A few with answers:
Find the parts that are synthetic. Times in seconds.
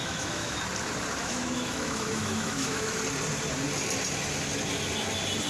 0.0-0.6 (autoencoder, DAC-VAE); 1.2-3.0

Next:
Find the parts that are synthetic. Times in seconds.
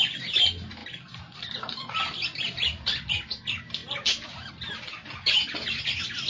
none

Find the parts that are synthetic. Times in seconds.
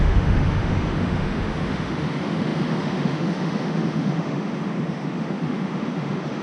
0.0-6.4 (autoencoder, DAC-VAE)